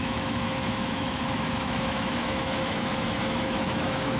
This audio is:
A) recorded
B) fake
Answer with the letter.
B